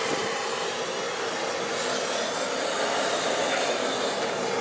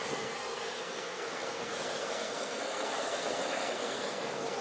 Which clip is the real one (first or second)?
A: first